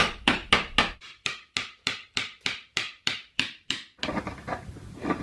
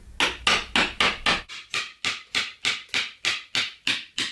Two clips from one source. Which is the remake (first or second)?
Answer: first